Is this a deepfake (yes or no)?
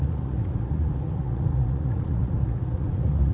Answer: yes